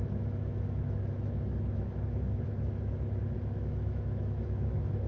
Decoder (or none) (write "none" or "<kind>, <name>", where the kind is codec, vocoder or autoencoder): autoencoder, DAC-VAE